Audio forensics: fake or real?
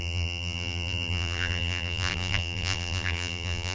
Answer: fake